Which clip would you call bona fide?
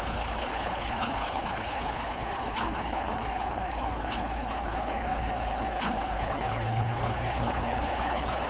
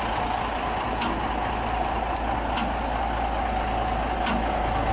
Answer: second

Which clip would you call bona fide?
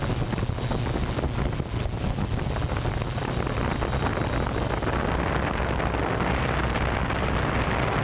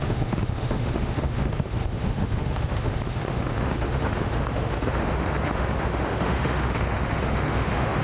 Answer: first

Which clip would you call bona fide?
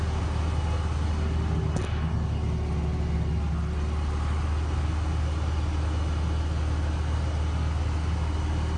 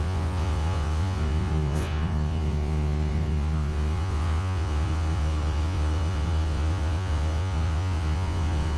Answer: first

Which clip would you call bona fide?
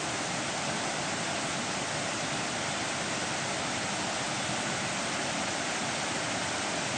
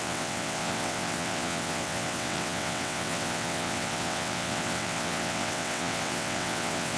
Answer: first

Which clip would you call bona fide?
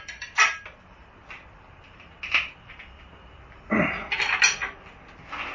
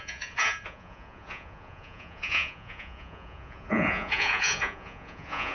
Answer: first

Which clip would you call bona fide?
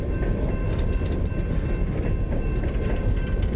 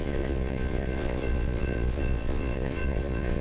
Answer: first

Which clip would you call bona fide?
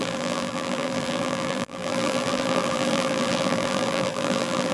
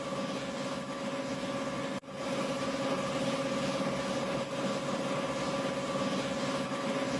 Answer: second